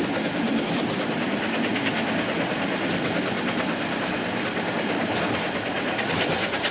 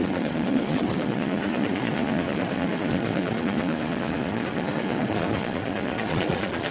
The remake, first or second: second